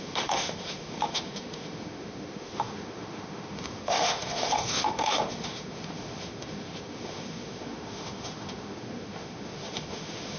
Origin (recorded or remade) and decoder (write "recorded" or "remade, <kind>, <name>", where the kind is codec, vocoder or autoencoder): remade, autoencoder, DAC-VAE